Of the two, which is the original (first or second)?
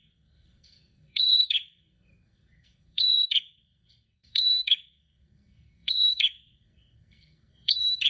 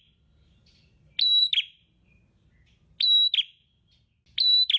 second